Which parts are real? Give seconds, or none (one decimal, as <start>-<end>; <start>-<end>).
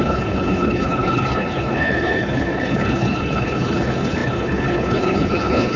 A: none